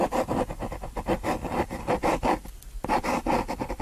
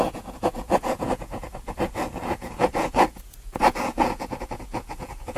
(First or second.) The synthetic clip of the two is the second